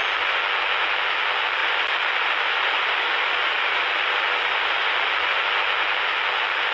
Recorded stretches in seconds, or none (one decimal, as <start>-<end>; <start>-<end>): 0.0-1.6; 5.6-6.7